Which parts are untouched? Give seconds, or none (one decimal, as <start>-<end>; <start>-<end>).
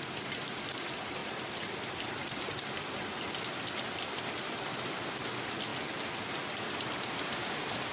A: 1.2-2.0